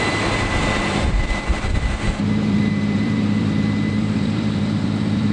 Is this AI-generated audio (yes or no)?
yes